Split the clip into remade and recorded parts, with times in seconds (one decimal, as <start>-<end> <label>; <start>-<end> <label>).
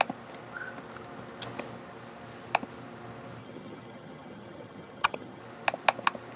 0.0-3.4 recorded; 3.4-5.4 remade; 5.4-6.4 recorded